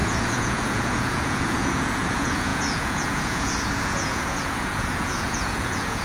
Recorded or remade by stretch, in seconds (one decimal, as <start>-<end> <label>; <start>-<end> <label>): 0.0-6.0 remade